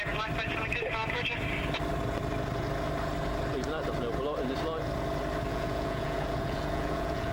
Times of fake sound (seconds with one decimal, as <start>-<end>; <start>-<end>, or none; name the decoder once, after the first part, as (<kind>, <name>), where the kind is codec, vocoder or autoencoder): 5.5-7.3 (vocoder, Vocos)